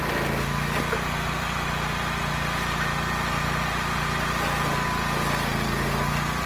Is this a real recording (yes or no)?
yes